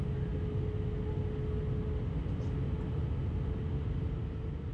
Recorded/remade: recorded